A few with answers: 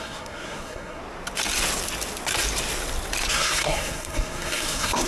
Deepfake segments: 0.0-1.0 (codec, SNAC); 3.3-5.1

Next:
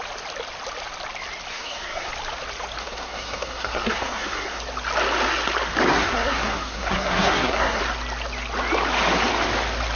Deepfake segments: 1.5-2.1 (codec, SNAC); 2.8-4.6; 5.9-7.8

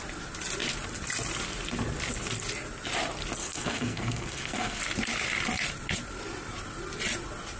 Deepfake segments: 3.4-4.8 (codec, SNAC)

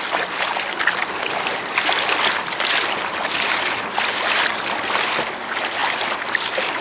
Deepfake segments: none

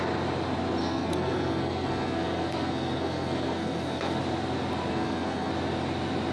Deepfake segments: 0.8-4.2 (codec, SNAC); 4.9-5.5

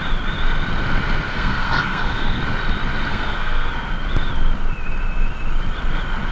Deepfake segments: 1.3-2.4 (codec, SNAC); 3.1-3.7

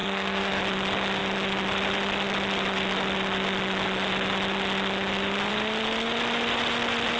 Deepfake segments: 0.0-0.6 (codec, SNAC)